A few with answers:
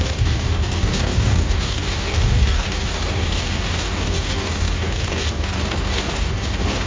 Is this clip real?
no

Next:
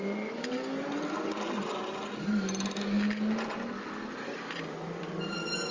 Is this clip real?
yes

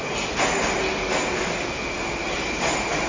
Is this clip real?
yes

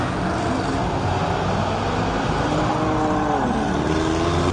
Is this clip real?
yes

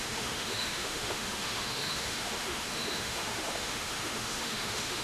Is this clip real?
no